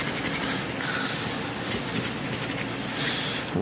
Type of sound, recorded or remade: recorded